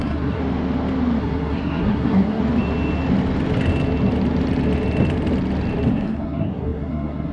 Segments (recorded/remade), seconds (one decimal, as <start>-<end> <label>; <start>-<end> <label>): 0.0-0.4 remade; 0.4-1.2 recorded; 1.2-2.4 remade; 2.4-5.9 recorded; 5.9-7.3 remade